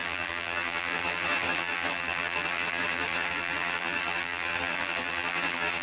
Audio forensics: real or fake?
fake